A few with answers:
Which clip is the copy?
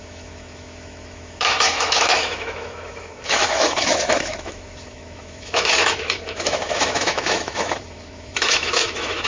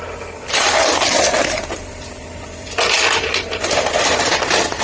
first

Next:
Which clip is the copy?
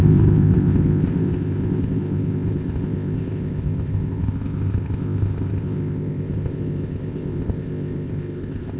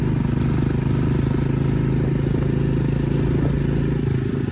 first